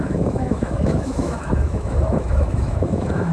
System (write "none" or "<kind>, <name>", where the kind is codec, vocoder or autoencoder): autoencoder, DAC-VAE